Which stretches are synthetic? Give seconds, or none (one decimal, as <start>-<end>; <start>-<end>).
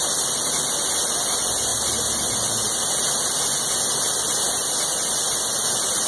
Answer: none